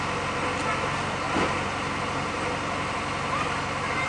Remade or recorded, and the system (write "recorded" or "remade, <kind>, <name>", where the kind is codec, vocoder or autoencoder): recorded